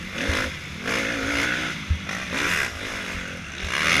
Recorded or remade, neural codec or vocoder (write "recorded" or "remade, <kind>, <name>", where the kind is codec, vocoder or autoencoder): recorded